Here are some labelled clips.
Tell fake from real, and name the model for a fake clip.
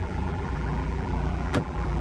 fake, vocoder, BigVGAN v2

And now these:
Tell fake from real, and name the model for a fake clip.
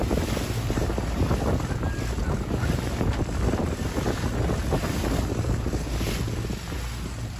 real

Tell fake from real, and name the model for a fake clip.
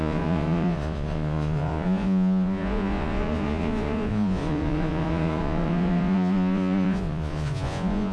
fake, vocoder, Vocos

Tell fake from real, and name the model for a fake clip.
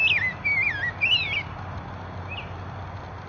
real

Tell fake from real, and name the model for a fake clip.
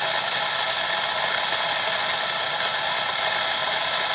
real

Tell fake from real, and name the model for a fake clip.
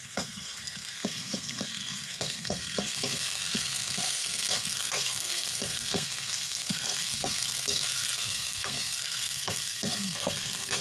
fake, codec, SNAC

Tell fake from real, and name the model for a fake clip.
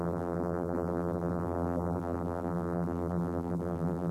fake, vocoder, BigVGAN v2